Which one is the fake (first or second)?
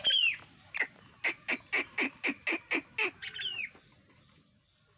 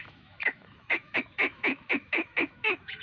second